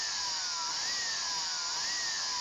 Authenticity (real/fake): real